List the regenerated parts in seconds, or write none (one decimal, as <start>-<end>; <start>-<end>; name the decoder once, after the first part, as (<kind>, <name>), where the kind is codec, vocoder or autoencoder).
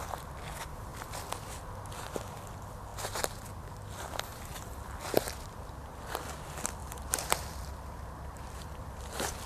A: 0.9-1.5 (vocoder, BigVGAN v2); 4.3-5.1; 6.8-9.1